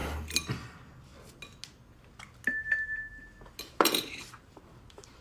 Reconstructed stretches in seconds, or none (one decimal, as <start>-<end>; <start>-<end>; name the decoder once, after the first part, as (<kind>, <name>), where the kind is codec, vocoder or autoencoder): 0.5-1.1 (vocoder, BigVGAN v2); 3.6-5.2

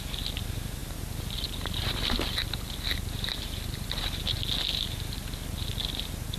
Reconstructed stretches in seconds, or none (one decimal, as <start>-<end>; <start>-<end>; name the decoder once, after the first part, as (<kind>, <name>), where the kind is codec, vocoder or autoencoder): none

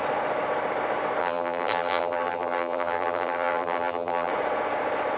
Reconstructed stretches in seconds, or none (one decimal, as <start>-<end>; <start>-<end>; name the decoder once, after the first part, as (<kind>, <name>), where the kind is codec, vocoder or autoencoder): 1.2-4.3 (vocoder, BigVGAN v2)

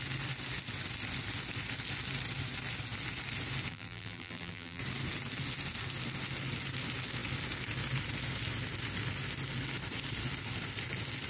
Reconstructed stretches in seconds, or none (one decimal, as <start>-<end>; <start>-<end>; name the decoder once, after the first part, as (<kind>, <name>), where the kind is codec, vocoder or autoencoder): 3.7-4.8 (vocoder, BigVGAN v2)

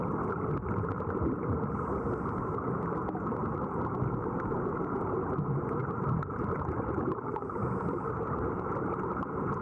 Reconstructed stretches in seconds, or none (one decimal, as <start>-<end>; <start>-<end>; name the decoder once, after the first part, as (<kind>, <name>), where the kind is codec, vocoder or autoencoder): 0.0-3.8 (vocoder, BigVGAN v2); 5.8-7.1